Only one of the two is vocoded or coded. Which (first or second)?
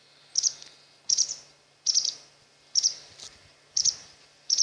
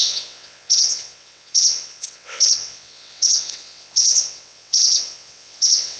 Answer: second